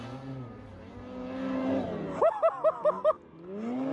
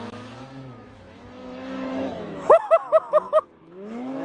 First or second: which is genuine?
first